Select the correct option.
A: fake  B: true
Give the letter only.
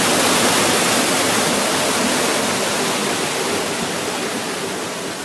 B